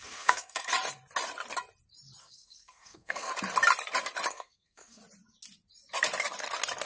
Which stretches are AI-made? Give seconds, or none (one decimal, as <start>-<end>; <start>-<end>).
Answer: 0.0-0.7; 2.2-3.3; 4.3-5.0